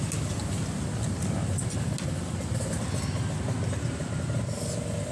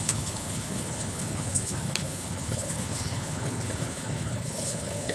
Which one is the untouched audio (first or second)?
first